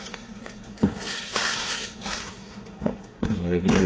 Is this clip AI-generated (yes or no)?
yes